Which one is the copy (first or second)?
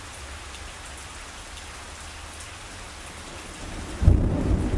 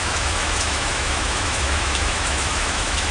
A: second